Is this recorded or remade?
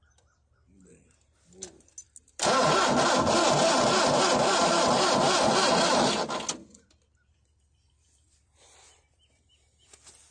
recorded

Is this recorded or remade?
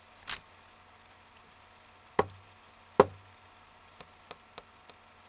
recorded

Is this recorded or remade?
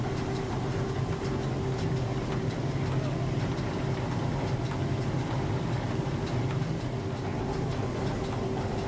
recorded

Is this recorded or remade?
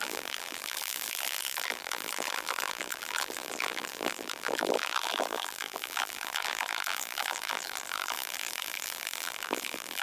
remade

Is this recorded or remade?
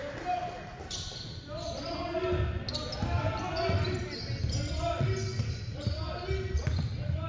recorded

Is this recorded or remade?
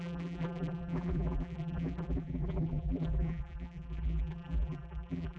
remade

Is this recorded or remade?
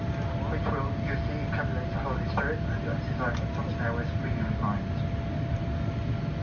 recorded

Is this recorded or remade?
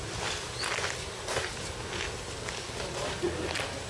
recorded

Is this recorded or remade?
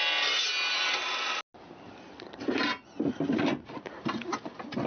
recorded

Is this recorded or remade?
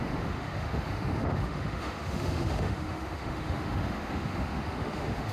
remade